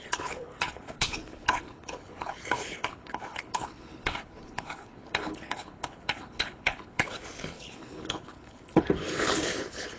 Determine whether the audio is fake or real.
fake